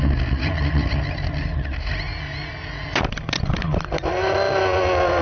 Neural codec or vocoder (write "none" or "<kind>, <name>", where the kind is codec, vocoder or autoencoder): none